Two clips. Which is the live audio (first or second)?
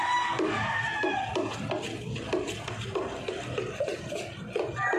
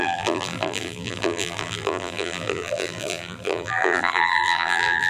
first